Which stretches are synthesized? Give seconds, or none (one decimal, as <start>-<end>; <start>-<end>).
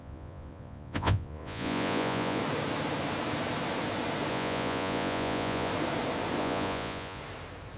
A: 0.0-2.4; 4.3-5.7; 6.4-7.2